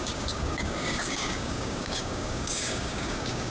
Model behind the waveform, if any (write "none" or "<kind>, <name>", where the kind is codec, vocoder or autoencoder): codec, DAC